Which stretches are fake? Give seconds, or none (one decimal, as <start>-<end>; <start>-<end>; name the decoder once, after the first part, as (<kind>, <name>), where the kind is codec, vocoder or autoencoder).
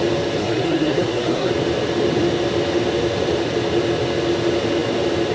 0.4-1.5 (codec, SNAC)